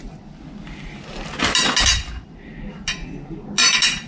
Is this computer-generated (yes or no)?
no